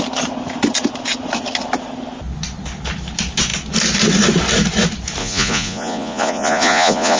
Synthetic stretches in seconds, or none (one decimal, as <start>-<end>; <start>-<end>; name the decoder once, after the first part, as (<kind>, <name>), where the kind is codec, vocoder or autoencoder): 5.2-7.2 (vocoder, Vocos)